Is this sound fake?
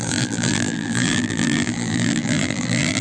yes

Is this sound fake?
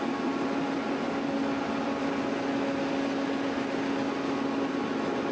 no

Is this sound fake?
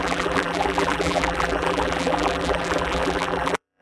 yes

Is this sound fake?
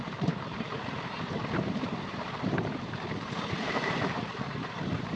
yes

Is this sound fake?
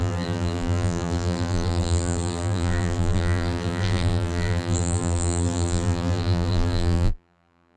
yes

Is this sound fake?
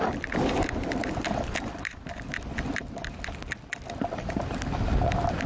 yes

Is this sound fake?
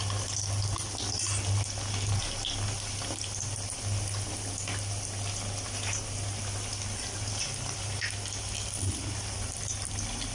yes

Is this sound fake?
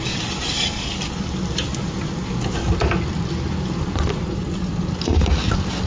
yes